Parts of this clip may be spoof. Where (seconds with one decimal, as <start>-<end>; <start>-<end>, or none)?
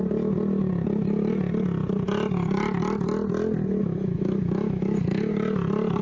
3.8-5.3